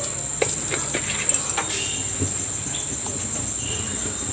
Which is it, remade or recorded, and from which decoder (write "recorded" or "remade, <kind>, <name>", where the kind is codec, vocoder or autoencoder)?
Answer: recorded